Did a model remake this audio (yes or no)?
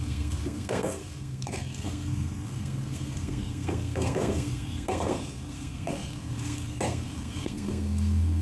yes